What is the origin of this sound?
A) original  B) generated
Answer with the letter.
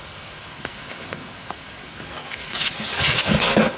B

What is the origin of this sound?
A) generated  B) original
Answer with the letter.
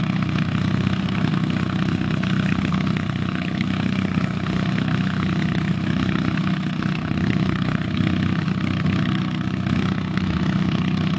A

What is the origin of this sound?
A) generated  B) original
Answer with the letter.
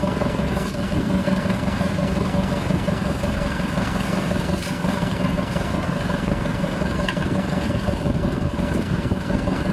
A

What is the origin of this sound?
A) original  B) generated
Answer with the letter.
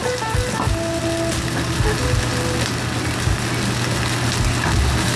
A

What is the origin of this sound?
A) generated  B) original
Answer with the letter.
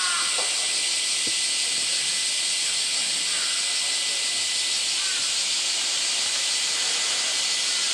B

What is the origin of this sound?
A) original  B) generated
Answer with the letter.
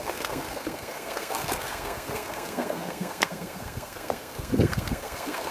B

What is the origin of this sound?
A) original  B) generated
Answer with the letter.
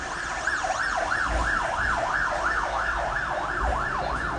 A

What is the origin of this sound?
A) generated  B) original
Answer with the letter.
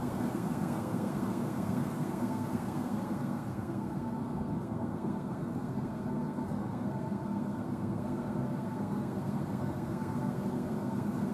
A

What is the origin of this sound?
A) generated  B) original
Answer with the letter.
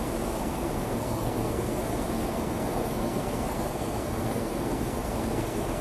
A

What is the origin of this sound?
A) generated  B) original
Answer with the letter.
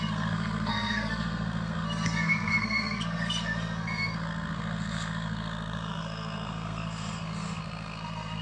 A